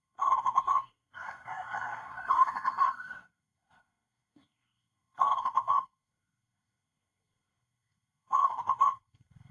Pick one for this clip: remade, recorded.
remade